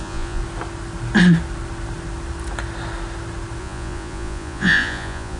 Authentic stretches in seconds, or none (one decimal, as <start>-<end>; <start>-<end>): 0.4-3.6